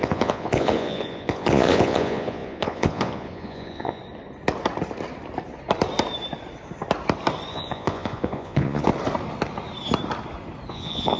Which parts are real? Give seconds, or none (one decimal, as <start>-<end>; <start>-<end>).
4.0-7.5; 8.9-10.7

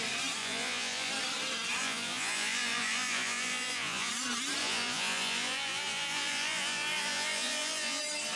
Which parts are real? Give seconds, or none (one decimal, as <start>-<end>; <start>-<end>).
0.0-0.4; 1.1-1.8; 4.1-4.6; 8.0-8.4

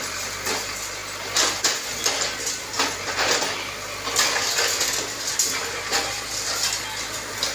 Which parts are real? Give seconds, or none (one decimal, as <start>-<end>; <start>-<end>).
0.0-7.5

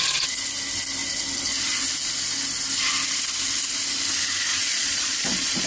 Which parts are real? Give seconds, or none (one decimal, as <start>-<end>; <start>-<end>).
0.0-4.5